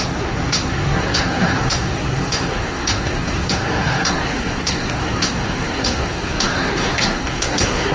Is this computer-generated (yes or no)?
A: yes